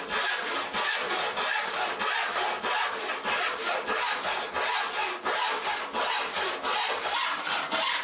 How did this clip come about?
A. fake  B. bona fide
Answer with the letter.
B